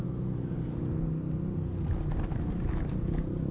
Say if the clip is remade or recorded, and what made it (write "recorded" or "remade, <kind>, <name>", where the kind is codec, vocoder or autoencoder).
recorded